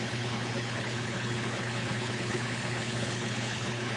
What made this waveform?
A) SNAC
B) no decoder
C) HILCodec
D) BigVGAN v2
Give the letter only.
C